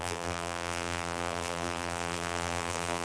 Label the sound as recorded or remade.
remade